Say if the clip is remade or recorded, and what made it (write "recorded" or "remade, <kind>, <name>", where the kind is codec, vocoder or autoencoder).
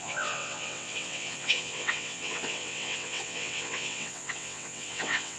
remade, vocoder, WaveNeXt